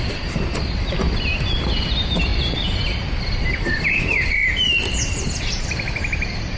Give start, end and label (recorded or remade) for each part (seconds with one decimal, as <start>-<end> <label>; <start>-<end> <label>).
0.0-1.0 remade; 1.0-1.9 recorded; 1.9-4.4 remade; 4.4-5.4 recorded; 5.4-6.6 remade